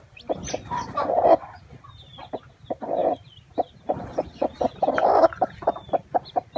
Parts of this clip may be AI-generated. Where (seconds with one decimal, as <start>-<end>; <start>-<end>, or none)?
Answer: none